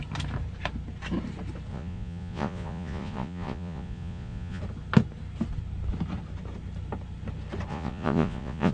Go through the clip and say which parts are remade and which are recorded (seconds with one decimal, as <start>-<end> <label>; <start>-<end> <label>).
0.0-1.7 recorded; 1.7-4.6 remade; 4.6-7.7 recorded; 7.7-8.7 remade